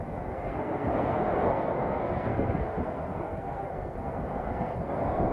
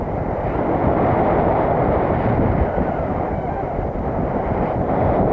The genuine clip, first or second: second